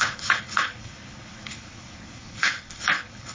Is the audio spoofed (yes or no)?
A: yes